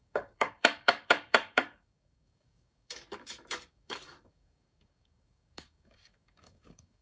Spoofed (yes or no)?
yes